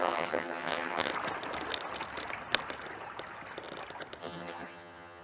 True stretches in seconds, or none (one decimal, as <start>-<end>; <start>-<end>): 1.1-4.2